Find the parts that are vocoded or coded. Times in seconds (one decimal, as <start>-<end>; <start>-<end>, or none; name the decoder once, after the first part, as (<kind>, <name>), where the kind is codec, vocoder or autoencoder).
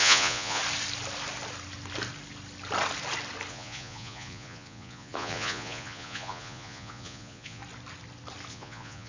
0.0-0.6 (vocoder, Vocos); 3.5-7.6; 8.5-9.1